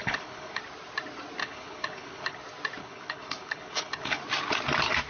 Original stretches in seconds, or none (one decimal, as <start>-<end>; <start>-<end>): 0.6-1.4; 2.4-2.8; 4.2-5.1